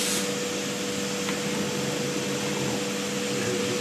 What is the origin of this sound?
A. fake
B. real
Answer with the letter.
B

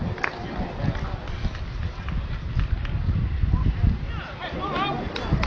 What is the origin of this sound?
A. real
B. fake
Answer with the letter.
A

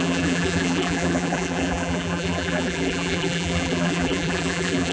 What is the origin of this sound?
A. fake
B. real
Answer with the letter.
A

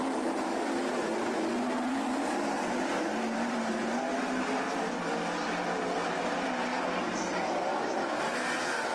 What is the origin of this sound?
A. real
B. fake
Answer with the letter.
A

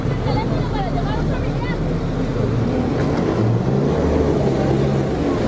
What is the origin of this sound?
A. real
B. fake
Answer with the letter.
A